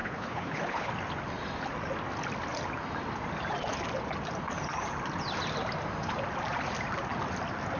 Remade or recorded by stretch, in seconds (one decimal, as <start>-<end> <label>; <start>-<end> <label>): 0.0-0.9 remade; 0.9-7.8 recorded